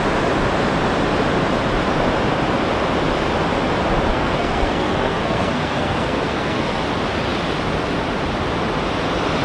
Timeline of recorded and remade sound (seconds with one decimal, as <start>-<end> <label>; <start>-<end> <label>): 0.0-4.1 recorded; 4.1-6.8 remade; 6.8-9.4 recorded